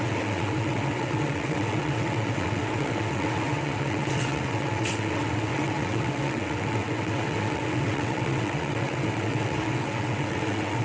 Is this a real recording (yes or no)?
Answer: no